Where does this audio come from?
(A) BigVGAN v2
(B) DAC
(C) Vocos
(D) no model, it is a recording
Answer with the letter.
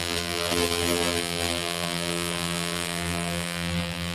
A